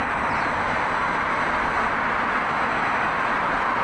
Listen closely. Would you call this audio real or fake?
real